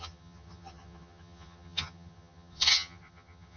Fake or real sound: fake